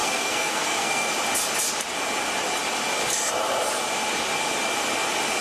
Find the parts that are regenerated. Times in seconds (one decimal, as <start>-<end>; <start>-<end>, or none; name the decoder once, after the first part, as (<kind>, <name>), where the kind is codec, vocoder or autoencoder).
0.0-1.1 (codec, SNAC)